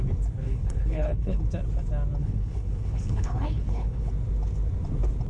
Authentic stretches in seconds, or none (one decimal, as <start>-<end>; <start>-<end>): 0.0-0.4; 1.4-2.2; 4.1-5.3